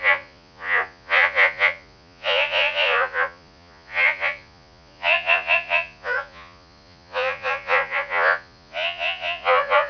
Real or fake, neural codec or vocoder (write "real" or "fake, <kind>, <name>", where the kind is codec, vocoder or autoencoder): fake, vocoder, Vocos